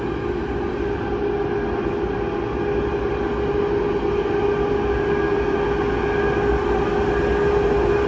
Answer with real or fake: real